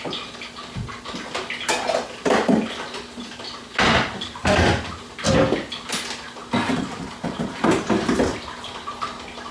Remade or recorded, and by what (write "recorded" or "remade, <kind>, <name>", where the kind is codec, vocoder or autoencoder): recorded